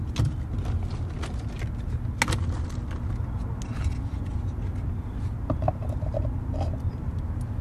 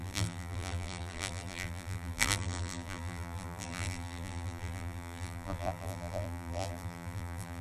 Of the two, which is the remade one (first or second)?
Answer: second